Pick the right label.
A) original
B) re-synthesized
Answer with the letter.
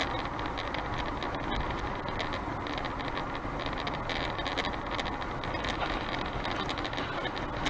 A